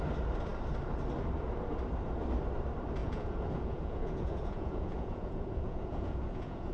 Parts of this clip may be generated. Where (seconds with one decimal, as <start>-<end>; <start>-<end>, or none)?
3.0-6.7